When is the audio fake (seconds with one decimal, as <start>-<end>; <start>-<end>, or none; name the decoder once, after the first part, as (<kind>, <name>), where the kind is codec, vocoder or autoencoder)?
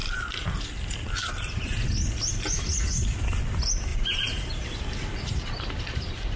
3.9-6.4 (vocoder, BigVGAN v2)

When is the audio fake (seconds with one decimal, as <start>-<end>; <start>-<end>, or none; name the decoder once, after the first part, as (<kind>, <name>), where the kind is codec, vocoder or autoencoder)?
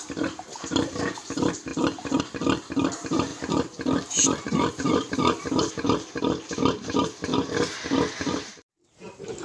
0.0-7.3 (vocoder, BigVGAN v2); 8.2-9.4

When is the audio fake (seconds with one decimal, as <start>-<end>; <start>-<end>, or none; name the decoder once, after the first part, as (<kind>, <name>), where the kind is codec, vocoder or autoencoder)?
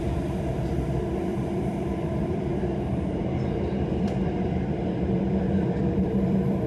0.0-2.5 (vocoder, BigVGAN v2); 3.5-6.7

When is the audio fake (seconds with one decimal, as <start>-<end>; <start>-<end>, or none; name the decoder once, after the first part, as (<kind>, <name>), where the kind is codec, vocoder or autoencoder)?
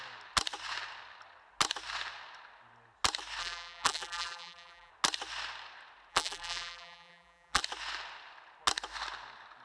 3.4-4.9 (vocoder, BigVGAN v2); 6.1-7.6